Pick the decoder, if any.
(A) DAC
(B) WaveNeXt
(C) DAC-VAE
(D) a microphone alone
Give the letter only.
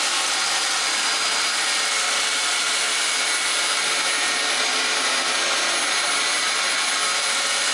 D